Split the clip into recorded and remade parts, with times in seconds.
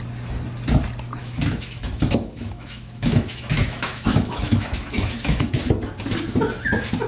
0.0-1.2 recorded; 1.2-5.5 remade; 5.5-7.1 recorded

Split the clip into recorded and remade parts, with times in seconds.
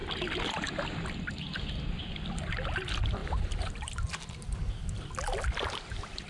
0.0-6.3 recorded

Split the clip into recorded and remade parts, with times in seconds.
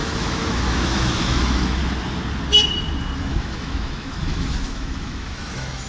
0.0-1.8 remade; 1.8-3.2 recorded; 3.2-5.9 remade